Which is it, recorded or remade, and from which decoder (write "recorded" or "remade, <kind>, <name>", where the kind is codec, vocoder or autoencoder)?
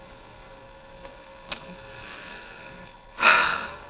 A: remade, codec, SNAC